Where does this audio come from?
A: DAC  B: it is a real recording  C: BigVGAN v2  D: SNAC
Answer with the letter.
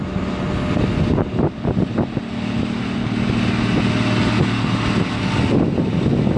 B